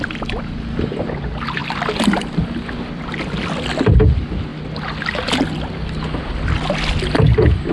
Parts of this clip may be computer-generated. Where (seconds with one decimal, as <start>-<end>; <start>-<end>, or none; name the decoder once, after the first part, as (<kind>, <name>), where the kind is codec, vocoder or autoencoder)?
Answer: none